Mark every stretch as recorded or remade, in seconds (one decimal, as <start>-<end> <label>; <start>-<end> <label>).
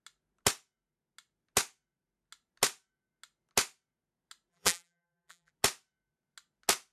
0.0-4.5 recorded; 4.5-5.5 remade; 5.5-6.9 recorded